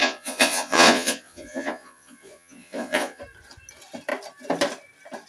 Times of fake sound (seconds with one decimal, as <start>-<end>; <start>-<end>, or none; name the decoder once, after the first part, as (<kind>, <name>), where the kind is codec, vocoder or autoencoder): 0.0-3.2 (vocoder, Vocos)